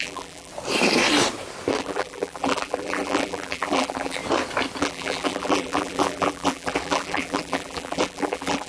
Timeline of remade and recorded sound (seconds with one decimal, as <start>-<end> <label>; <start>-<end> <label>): 0.0-0.5 remade; 0.5-1.8 recorded; 1.8-4.2 remade; 4.2-4.8 recorded; 4.8-8.7 remade